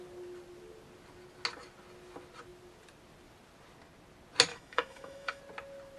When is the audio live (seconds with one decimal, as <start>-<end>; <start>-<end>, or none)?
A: 0.0-4.5; 5.4-6.0